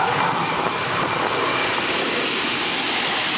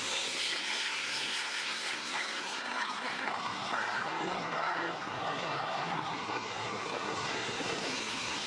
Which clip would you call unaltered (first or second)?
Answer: first